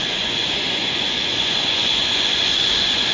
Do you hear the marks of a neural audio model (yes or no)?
yes